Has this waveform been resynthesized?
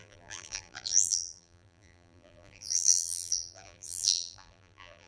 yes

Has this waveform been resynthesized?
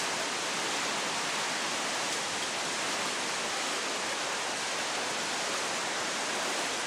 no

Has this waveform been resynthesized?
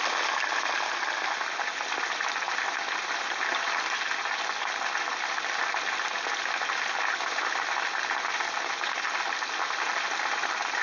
no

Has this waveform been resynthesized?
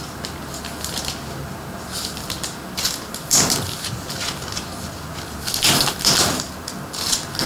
no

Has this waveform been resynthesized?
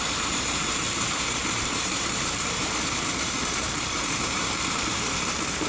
yes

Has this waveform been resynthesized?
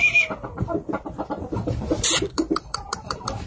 yes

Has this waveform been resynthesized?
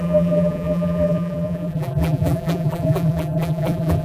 yes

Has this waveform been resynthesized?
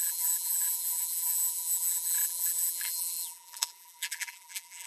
yes